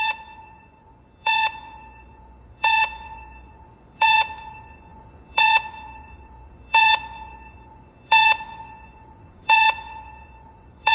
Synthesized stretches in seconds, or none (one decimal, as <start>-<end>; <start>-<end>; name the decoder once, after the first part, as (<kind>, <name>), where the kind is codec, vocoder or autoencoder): 0.0-10.9 (vocoder, Vocos)